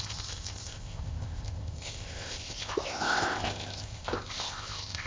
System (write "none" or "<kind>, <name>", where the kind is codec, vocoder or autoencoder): codec, ZipCodec